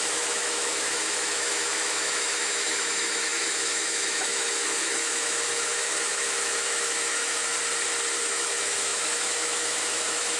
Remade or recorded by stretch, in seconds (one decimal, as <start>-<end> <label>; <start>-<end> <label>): 0.0-7.5 remade; 7.5-8.2 recorded; 8.2-10.4 remade